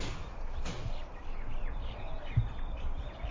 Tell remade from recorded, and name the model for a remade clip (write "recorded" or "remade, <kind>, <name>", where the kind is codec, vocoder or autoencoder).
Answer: recorded